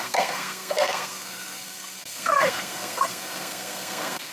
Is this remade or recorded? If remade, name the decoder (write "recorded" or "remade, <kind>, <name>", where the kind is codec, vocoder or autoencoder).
remade, codec, SNAC